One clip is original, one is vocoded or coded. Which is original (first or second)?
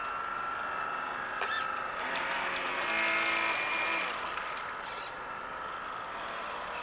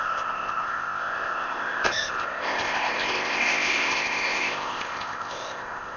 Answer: first